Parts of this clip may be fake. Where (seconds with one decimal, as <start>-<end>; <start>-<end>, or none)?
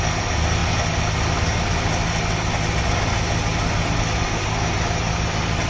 none